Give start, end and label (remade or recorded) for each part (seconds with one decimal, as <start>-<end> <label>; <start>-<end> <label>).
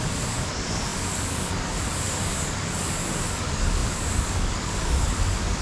0.0-5.6 remade